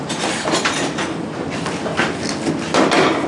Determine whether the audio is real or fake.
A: real